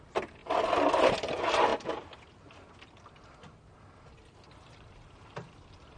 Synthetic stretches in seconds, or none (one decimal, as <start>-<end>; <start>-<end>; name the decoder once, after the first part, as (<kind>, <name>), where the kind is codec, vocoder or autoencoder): 0.0-0.4 (vocoder, BigVGAN v2); 0.9-1.7; 4.7-6.0